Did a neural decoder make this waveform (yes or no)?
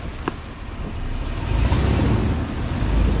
no